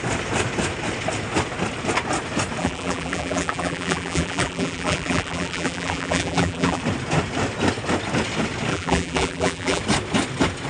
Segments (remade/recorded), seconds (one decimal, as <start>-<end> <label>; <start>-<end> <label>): 0.0-2.6 recorded; 2.6-6.8 remade; 6.8-8.7 recorded; 8.7-9.8 remade; 9.8-10.7 recorded